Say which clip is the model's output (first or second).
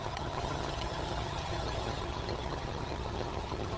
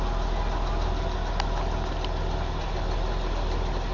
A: first